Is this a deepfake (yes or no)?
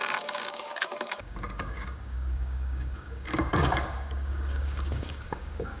yes